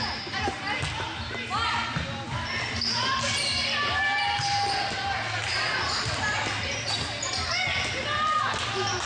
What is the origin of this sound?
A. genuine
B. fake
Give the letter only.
A